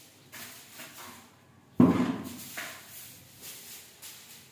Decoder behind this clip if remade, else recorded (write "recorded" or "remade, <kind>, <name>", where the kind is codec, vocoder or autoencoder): recorded